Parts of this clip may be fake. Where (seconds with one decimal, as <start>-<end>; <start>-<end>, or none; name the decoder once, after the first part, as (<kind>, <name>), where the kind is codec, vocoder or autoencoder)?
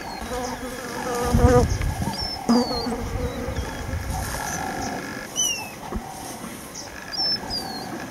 2.0-4.1 (vocoder, BigVGAN v2)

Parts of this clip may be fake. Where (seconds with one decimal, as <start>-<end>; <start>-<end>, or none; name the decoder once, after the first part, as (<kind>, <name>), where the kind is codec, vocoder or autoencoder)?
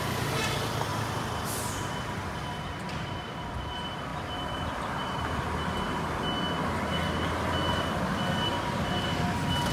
0.9-1.5 (vocoder, BigVGAN v2)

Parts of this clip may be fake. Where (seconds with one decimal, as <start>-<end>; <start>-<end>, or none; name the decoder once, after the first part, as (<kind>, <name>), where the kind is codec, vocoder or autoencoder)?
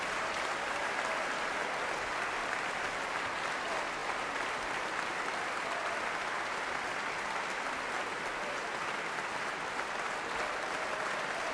none